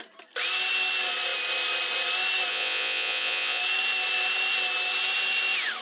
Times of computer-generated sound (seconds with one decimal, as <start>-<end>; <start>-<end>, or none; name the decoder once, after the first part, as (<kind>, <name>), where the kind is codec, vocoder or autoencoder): 2.5-3.6 (vocoder, Vocos)